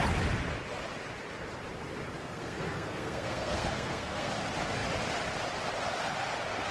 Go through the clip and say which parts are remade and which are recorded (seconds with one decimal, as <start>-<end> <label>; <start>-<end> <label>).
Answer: 0.0-2.2 recorded; 2.2-4.3 remade; 4.3-6.7 recorded